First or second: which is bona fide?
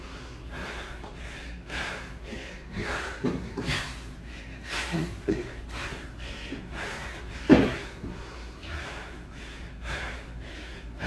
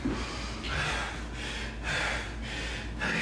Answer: second